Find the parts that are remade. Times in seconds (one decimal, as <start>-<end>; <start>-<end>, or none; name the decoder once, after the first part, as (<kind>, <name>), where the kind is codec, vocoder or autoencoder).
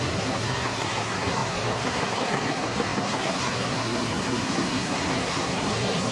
0.0-6.1 (codec, SNAC)